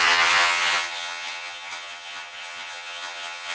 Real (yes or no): no